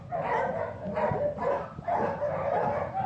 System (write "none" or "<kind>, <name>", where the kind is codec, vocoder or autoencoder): none